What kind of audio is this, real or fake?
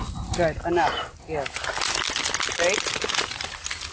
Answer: real